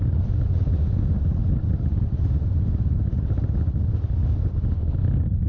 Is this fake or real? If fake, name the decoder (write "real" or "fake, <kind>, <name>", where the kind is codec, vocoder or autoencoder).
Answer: real